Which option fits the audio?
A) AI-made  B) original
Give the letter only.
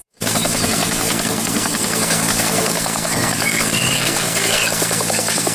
A